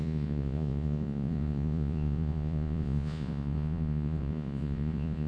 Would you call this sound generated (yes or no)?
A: yes